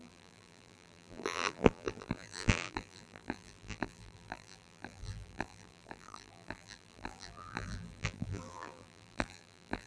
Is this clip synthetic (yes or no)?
yes